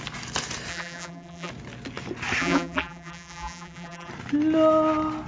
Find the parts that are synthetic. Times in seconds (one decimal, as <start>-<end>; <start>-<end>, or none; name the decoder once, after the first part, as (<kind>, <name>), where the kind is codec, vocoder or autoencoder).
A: 0.7-1.5 (vocoder, BigVGAN v2); 2.4-4.1

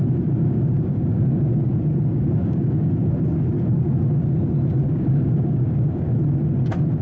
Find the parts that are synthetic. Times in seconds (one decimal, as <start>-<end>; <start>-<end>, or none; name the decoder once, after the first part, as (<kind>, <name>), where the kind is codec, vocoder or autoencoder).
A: 0.4-1.2 (codec, DAC); 2.1-2.9; 4.8-6.1

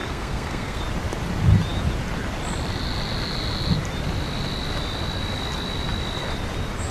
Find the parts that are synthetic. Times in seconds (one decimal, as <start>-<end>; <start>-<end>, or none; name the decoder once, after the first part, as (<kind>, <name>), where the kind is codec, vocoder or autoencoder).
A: 0.0-0.8 (codec, SNAC)

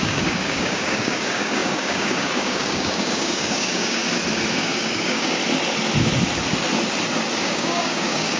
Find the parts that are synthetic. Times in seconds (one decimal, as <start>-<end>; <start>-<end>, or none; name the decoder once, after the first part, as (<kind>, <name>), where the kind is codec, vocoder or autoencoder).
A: 0.0-4.0 (codec, DAC); 4.5-5.4; 7.4-8.4

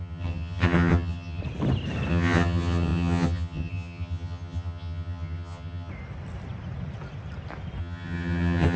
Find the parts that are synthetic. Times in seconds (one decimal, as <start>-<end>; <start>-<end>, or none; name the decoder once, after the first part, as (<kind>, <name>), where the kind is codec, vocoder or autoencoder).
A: 0.0-1.4 (vocoder, HiFi-GAN); 2.1-5.9; 7.8-8.8

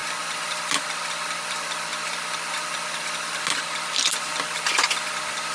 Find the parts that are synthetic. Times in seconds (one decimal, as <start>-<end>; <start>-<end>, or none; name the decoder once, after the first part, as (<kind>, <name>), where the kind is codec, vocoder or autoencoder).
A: none

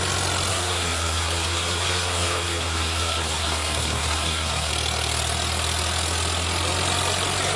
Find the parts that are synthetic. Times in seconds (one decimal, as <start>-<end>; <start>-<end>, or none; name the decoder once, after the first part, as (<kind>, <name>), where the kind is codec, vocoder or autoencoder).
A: 0.5-4.7 (codec, SNAC)